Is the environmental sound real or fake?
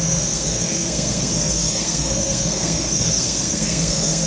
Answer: fake